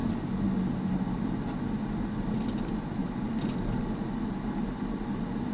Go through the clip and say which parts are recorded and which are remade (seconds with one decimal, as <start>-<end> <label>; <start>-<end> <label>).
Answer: 0.0-5.5 recorded